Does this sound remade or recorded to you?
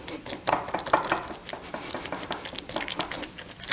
recorded